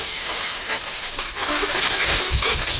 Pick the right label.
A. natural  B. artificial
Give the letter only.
B